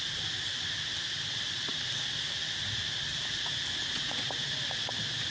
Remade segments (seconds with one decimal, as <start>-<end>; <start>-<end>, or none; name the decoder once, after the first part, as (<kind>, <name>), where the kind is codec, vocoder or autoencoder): none